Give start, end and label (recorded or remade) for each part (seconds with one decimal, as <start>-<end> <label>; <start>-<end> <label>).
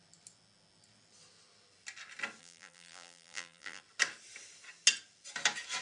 0.0-2.4 recorded; 2.4-3.8 remade; 3.8-5.8 recorded